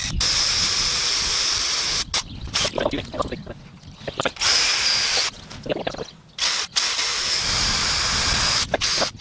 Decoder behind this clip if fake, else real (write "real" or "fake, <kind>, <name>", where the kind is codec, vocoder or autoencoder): real